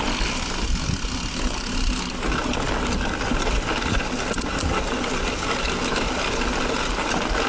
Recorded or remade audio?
recorded